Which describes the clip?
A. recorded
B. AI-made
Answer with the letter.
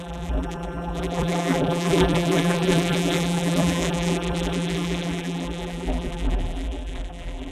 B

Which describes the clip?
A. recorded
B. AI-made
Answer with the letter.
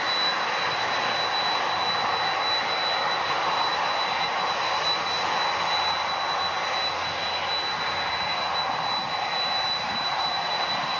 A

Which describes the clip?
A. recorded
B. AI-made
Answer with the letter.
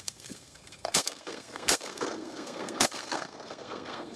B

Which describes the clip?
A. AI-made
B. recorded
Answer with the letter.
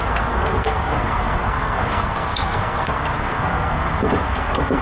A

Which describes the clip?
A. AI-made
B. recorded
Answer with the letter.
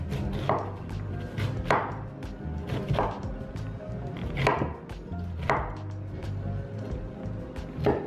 B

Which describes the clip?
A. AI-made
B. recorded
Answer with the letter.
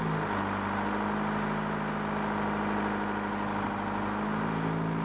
B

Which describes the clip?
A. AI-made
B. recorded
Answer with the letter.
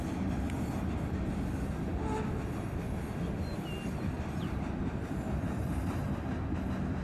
B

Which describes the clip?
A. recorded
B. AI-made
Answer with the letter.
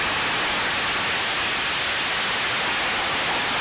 A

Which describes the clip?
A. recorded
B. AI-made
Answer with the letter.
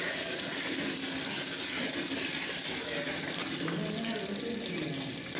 A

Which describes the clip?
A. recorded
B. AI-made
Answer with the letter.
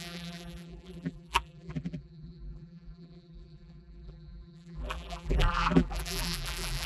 B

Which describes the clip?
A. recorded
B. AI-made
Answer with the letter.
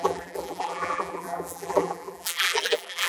B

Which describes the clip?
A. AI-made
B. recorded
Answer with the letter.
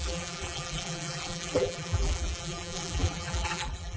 A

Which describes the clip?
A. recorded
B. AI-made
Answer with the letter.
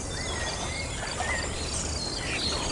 A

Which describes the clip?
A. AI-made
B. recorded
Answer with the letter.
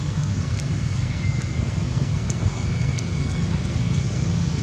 A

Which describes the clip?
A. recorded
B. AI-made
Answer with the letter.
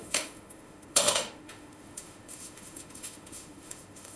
B